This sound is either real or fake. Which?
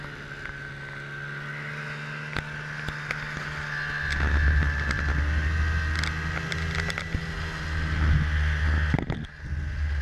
real